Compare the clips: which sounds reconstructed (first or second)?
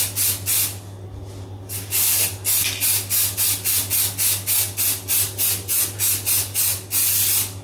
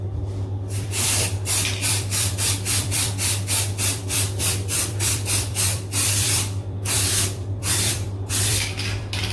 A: second